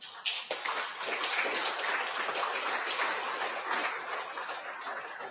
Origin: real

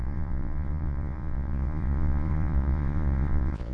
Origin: fake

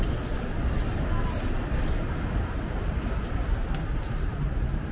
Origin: real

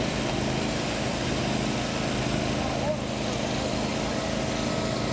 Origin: real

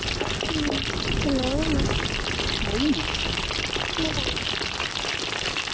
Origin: real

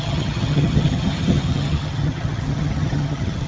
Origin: fake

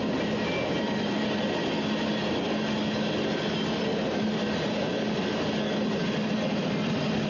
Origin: real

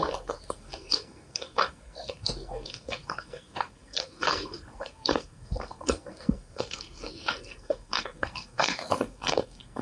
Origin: fake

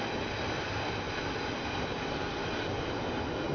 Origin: real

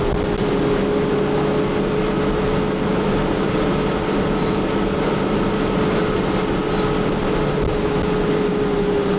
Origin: real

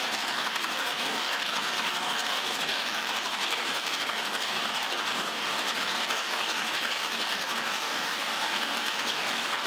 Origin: fake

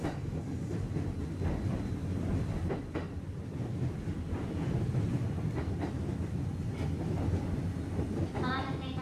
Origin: real